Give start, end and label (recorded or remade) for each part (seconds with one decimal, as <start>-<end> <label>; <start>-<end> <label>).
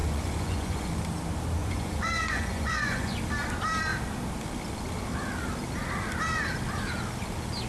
0.0-0.9 remade; 0.9-1.6 recorded; 1.6-3.2 remade; 3.2-7.7 recorded